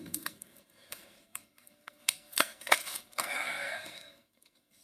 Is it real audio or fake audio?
fake